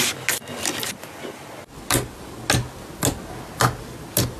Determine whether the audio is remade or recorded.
recorded